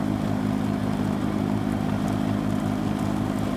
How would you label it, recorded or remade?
recorded